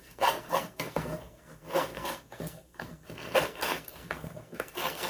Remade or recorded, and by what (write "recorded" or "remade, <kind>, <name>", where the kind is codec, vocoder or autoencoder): remade, codec, SNAC